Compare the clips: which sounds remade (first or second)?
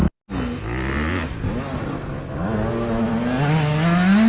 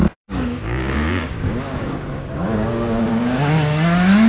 second